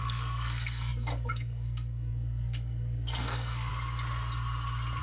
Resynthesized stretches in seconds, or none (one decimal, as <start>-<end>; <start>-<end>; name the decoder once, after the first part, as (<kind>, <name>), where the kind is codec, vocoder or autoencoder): 0.0-3.7 (codec, SNAC)